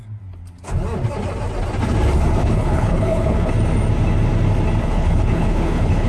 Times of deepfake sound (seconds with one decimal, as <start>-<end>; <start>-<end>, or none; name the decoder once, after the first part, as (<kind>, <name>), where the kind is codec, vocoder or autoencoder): 2.4-3.5 (codec, HILCodec); 4.8-6.1